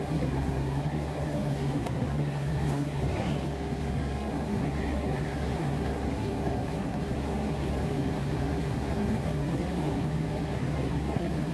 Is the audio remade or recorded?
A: remade